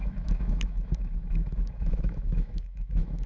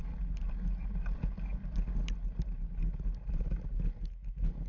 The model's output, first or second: first